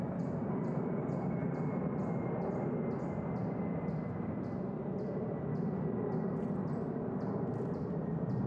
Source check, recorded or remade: recorded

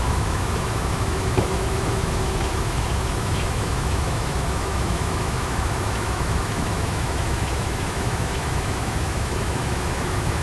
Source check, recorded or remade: remade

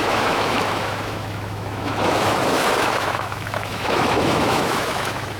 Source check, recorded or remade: remade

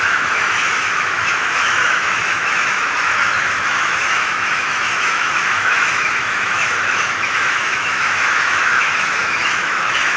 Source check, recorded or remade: remade